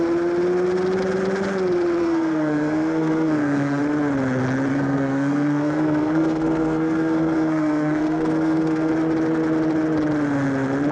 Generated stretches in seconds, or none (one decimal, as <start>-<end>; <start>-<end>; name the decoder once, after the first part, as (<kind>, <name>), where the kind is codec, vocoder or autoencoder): 2.0-3.8 (codec, SNAC); 4.7-8.9